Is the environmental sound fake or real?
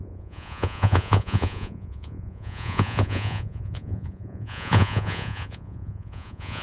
fake